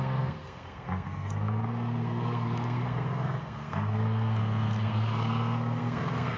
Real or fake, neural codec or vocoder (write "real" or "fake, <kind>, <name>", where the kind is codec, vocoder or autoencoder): fake, codec, SNAC